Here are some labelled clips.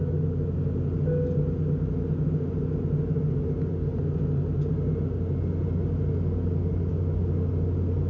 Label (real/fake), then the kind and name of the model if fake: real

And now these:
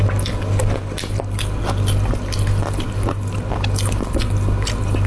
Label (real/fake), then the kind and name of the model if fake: real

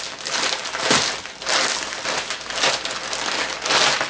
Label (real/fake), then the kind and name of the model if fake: real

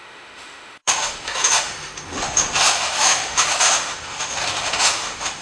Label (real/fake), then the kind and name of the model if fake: fake, autoencoder, DAC-VAE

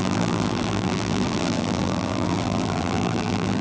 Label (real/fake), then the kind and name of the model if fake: fake, vocoder, BigVGAN v2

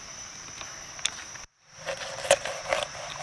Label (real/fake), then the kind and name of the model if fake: real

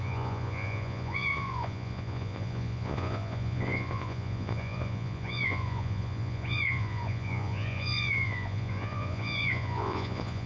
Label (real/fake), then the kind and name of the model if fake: fake, vocoder, Vocos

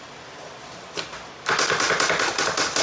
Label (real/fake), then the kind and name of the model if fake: real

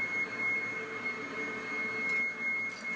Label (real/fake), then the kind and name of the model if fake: real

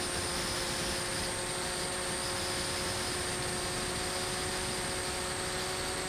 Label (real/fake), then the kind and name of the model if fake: real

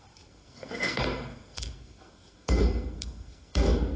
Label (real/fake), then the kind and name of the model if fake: fake, codec, SNAC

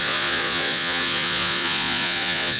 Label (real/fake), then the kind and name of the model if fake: fake, vocoder, Vocos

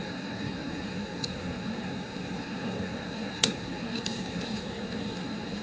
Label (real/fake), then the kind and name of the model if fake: fake, codec, SNAC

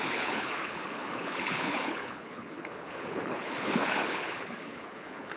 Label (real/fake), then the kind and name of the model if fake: fake, codec, HILCodec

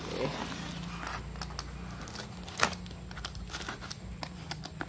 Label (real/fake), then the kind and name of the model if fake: real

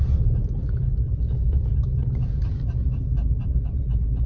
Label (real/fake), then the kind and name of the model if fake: real